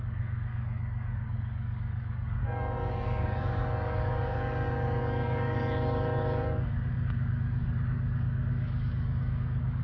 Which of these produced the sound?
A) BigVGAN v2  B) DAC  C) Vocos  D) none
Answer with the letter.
B